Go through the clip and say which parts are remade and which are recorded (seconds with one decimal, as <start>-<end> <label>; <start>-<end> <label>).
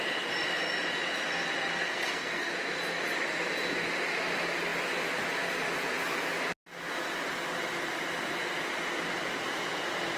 0.0-1.7 recorded; 1.7-2.5 remade; 2.5-10.2 recorded